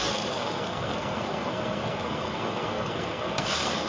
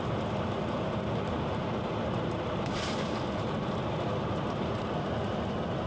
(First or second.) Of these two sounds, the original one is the second